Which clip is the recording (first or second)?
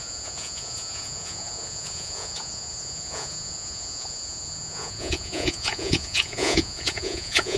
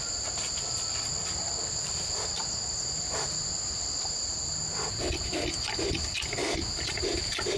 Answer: second